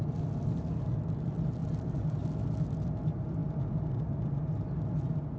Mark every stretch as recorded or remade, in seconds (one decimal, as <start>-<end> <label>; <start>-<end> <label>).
0.0-5.4 recorded